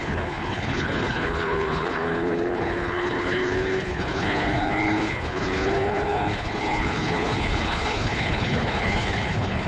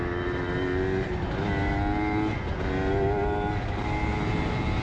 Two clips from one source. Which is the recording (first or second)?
second